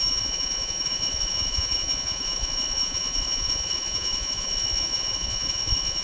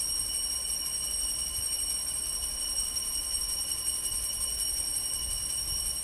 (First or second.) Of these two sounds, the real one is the second